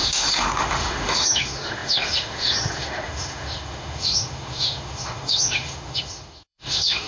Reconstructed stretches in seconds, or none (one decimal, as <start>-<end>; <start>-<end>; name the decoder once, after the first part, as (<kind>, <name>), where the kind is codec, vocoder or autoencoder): 0.0-7.1 (autoencoder, DAC-VAE)

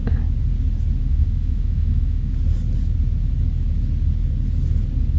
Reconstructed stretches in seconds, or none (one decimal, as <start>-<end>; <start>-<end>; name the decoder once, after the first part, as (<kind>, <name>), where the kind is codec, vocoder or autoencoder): 1.0-2.3 (autoencoder, DAC-VAE)